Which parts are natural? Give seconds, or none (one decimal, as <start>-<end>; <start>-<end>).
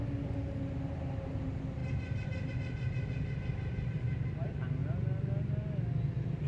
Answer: 0.0-6.5